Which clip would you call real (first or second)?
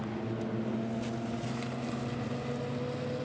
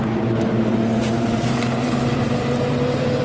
first